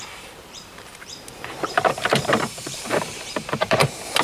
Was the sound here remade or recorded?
remade